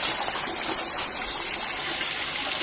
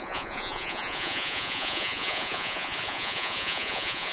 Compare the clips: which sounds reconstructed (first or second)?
second